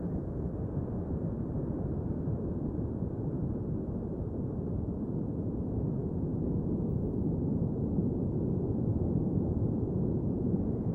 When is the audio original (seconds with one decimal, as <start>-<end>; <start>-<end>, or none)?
0.0-9.2